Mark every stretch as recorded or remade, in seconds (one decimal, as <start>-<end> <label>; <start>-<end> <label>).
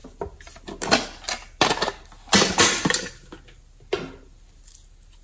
0.0-5.2 recorded